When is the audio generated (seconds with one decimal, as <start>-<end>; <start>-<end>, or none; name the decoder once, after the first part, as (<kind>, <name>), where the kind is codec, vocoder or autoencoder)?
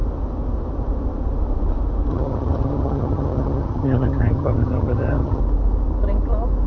2.1-5.4 (vocoder, HiFi-GAN)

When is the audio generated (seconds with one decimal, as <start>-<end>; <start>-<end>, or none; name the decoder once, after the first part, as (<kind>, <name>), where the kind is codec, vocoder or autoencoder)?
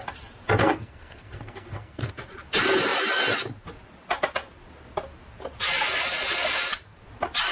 0.6-2.1 (codec, SNAC)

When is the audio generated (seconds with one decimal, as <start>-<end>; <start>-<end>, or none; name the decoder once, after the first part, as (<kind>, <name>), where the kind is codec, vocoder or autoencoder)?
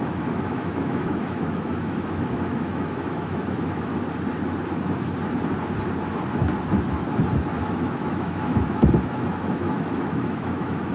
0.0-3.9 (autoencoder, DAC-VAE); 7.6-10.9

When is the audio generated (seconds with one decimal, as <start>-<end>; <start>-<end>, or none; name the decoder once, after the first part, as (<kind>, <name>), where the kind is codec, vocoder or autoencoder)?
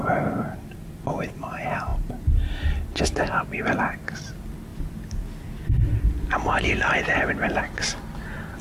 none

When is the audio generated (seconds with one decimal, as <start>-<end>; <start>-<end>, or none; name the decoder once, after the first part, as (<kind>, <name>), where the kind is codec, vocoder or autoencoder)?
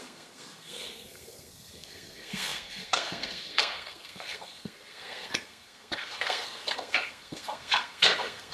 0.0-8.5 (codec, SNAC)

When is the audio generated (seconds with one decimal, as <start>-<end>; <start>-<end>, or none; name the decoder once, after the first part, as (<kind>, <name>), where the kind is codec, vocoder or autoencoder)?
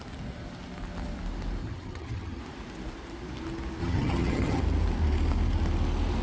1.6-2.4 (vocoder, HiFi-GAN); 3.8-4.6